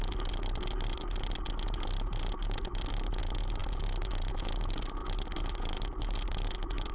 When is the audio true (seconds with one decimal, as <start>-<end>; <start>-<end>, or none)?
0.0-6.9